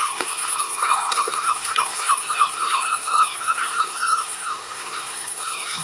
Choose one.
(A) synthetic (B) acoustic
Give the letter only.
A